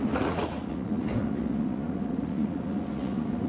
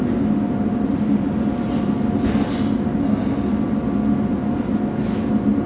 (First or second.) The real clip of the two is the second